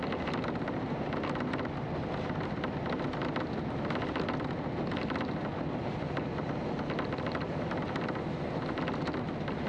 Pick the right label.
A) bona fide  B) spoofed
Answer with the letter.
A